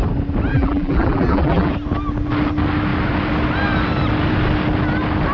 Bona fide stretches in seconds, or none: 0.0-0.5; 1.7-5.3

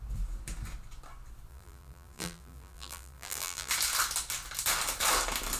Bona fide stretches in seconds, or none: 0.0-1.5; 3.7-5.6

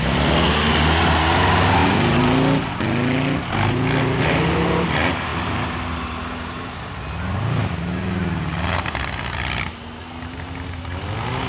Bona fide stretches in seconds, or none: 0.0-11.5

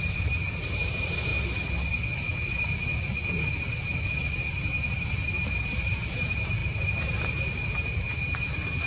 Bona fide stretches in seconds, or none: 1.3-2.5; 2.9-4.5

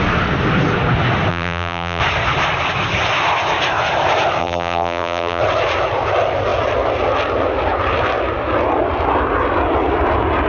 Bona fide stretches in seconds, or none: 0.0-1.3; 2.0-4.4; 5.4-10.5

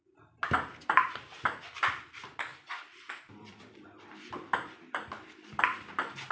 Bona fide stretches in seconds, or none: 0.0-2.5